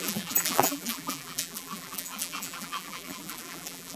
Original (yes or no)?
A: no